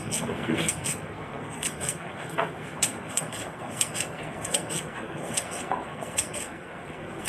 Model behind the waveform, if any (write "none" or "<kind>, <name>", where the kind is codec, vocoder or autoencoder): codec, SNAC